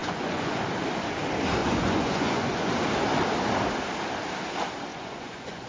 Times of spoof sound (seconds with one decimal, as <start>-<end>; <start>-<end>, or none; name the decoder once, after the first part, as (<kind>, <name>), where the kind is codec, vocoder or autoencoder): 0.0-0.6 (vocoder, Vocos); 1.6-2.7; 4.9-5.7